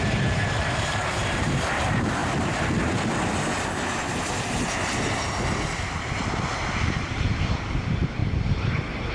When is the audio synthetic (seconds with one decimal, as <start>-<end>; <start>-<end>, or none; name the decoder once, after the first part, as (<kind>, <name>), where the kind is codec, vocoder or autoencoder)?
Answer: 0.0-2.2 (vocoder, BigVGAN v2); 6.3-9.1